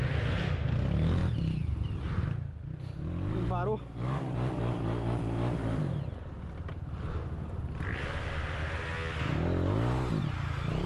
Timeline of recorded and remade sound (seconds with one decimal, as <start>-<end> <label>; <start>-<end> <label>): 0.0-10.9 recorded